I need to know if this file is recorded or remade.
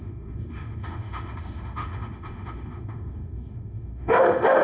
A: remade